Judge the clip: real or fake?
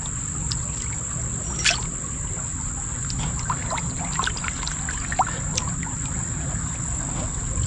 real